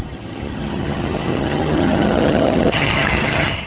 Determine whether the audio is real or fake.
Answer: fake